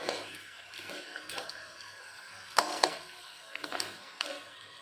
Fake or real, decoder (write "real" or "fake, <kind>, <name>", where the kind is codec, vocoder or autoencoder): fake, codec, SNAC